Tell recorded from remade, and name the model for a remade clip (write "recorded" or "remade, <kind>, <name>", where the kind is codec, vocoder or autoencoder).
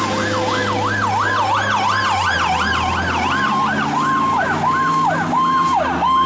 recorded